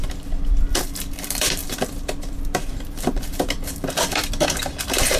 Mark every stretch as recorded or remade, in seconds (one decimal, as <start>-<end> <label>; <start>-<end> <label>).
0.0-5.2 remade